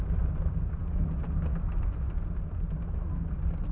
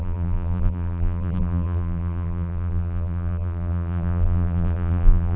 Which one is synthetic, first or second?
second